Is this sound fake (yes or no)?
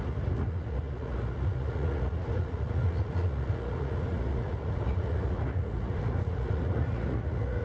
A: yes